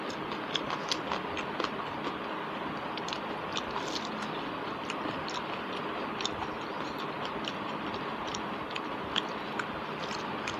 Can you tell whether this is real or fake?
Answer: real